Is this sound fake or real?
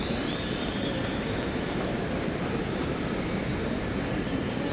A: fake